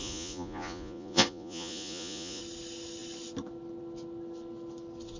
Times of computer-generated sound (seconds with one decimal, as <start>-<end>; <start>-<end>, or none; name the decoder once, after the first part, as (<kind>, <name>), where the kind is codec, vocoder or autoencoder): 0.0-2.4 (vocoder, Vocos)